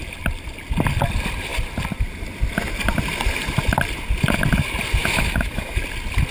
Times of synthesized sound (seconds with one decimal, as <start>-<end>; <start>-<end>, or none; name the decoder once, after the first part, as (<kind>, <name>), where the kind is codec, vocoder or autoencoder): 5.0-5.8 (autoencoder, DAC-VAE)